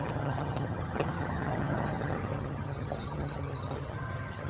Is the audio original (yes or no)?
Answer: no